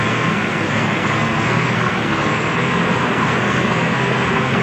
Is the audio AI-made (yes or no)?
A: yes